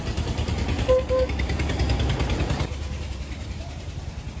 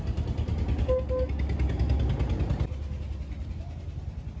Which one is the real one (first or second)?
second